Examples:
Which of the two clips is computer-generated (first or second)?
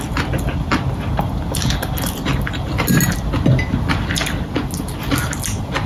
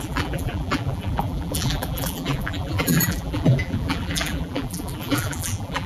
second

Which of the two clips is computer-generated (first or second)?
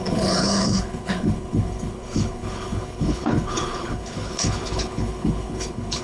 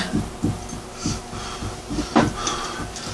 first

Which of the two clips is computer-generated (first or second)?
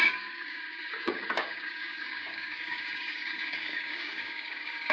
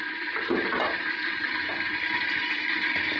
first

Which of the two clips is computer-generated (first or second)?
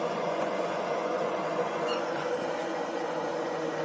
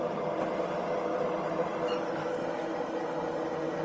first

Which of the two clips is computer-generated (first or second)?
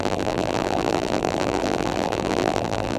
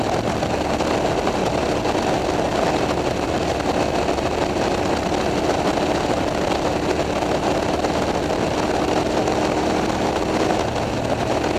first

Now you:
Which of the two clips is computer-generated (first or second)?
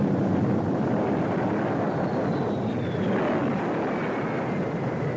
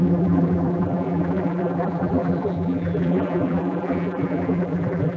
second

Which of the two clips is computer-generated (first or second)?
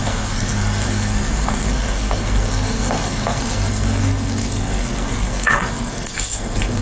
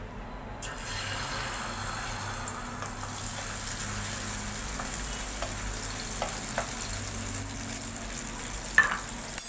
first